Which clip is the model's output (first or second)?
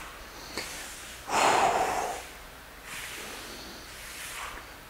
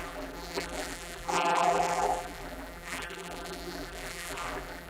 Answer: second